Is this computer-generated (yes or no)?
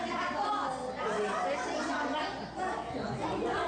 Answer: no